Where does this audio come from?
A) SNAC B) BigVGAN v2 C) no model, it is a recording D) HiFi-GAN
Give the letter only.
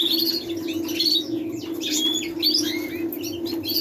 C